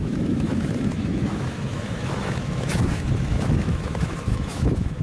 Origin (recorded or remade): remade